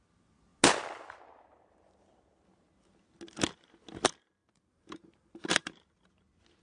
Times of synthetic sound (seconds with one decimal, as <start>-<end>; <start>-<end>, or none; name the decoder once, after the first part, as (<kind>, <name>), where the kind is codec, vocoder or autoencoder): 4.4-6.1 (vocoder, BigVGAN v2)